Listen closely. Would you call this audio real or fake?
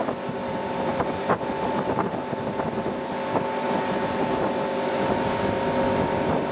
real